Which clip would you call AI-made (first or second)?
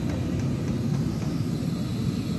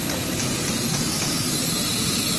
second